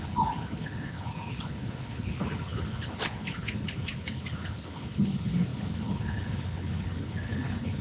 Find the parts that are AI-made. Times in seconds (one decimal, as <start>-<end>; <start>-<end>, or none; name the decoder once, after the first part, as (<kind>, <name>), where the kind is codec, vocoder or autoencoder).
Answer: 0.0-7.8 (codec, HILCodec)